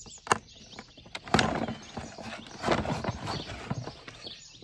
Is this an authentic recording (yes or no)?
yes